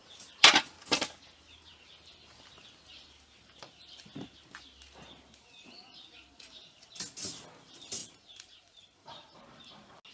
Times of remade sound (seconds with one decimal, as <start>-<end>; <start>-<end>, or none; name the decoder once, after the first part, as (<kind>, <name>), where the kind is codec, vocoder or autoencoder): 8.0-9.7 (vocoder, BigVGAN v2)